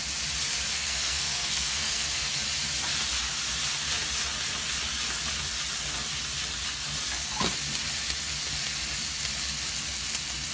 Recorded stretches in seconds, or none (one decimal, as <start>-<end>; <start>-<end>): 0.0-0.7; 2.3-10.5